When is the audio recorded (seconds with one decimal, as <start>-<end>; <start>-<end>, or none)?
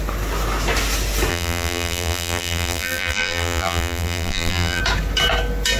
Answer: 0.0-1.3; 4.8-5.8